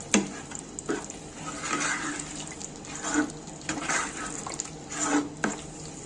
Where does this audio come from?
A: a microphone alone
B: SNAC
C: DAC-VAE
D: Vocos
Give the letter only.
A